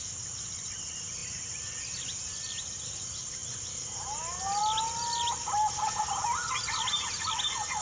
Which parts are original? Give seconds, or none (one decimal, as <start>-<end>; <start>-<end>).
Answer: 0.0-7.8

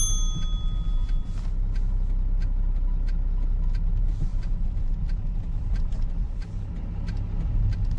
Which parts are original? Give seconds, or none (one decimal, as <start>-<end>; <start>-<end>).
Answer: 0.0-8.0